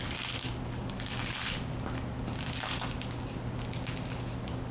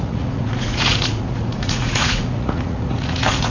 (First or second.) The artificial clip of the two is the second